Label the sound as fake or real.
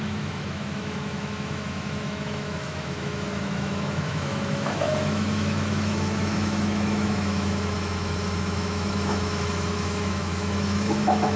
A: fake